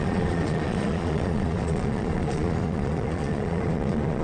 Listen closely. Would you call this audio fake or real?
fake